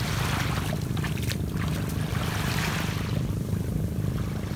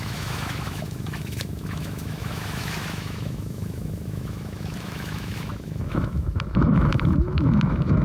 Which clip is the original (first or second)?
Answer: first